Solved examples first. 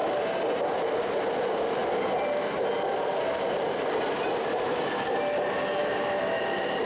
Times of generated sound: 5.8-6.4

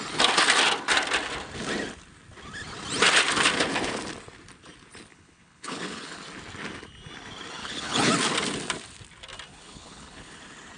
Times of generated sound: 5.1-6.2; 7.6-8.1; 9.5-10.4

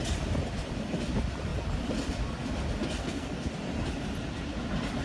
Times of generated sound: 3.0-3.5

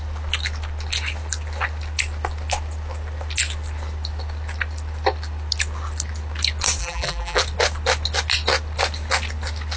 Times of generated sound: 6.8-7.4

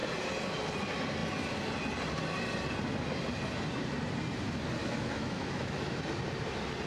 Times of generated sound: 4.8-6.0

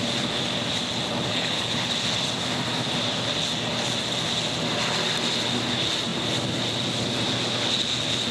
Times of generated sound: 1.3-1.9

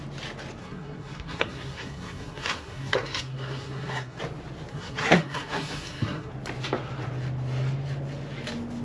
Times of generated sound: 0.6-4.2; 4.7-6.3

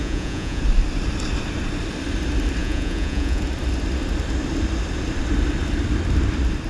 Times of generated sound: 0.0-0.6; 2.6-3.4